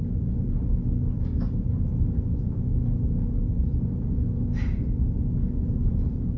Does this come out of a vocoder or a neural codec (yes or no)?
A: no